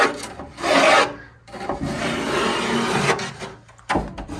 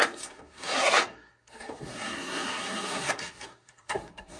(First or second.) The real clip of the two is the first